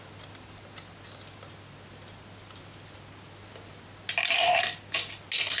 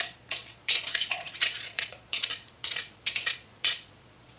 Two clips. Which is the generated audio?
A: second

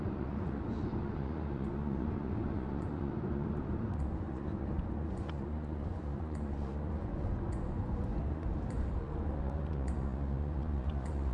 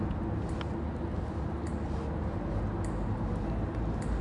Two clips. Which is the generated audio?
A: first